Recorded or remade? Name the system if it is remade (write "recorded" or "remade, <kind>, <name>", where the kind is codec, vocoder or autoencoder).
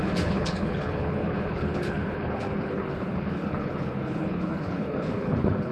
remade, codec, HILCodec